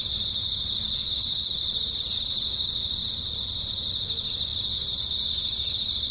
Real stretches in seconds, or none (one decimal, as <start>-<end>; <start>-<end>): 0.0-6.1